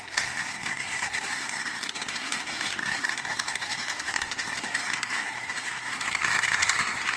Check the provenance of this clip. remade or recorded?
remade